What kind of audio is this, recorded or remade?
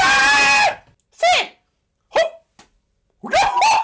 recorded